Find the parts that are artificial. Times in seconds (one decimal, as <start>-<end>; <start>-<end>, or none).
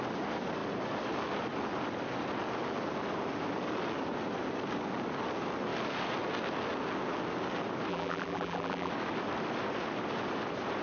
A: 7.9-8.9